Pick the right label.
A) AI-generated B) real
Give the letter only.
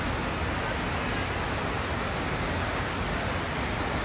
B